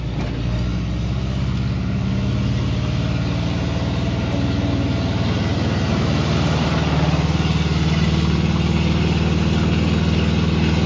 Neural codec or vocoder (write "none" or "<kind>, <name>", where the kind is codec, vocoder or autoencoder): none